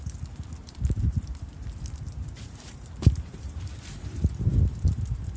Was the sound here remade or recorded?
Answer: remade